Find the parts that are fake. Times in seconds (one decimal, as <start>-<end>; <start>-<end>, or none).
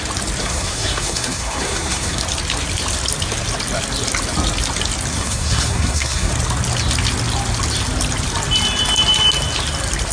0.4-2.2; 5.1-6.3